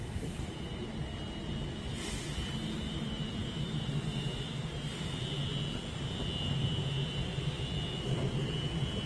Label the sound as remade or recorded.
recorded